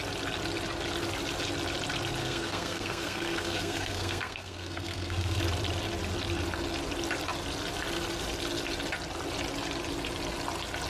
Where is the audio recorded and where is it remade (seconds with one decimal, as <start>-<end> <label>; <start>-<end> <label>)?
0.0-2.2 recorded; 2.2-5.4 remade; 5.4-10.9 recorded